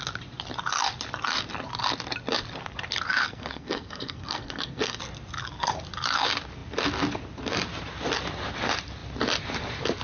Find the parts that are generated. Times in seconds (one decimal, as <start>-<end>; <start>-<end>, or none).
3.2-5.0